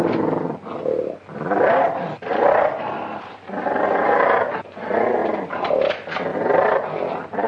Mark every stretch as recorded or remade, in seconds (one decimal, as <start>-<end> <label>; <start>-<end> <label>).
0.0-2.3 recorded; 2.3-3.5 remade; 3.5-5.2 recorded; 5.2-5.7 remade; 5.7-6.3 recorded; 6.3-7.5 remade